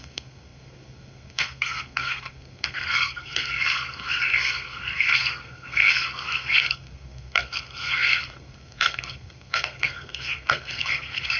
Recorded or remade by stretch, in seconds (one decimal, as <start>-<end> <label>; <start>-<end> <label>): 0.0-11.4 remade